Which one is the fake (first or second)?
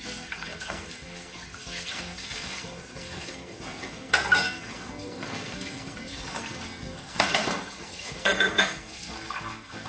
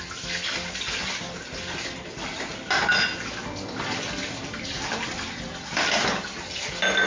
first